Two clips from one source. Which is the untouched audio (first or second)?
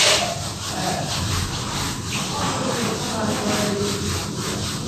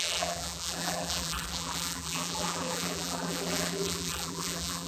first